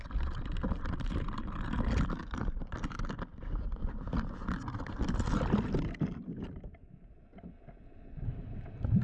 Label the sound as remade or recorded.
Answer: recorded